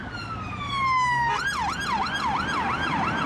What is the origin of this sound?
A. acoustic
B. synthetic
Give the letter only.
A